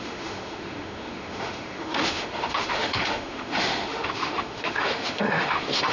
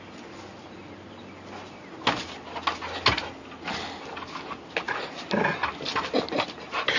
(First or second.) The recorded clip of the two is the second